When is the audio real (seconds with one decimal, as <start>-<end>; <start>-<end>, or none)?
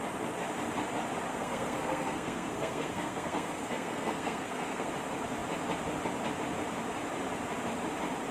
0.0-1.3; 4.9-8.3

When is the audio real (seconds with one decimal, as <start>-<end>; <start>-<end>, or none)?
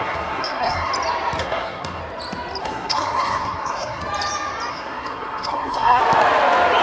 0.9-1.4; 2.0-2.6; 4.0-4.7; 6.0-6.8